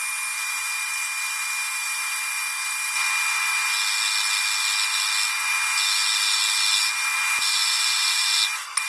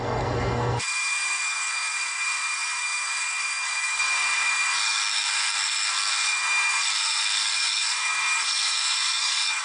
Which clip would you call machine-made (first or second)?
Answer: second